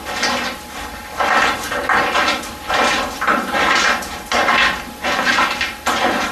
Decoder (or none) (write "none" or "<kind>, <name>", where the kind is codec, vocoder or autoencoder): none